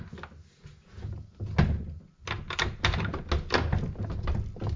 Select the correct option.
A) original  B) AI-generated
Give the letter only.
A